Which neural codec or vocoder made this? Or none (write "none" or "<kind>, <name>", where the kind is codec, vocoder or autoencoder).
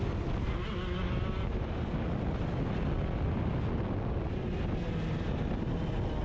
none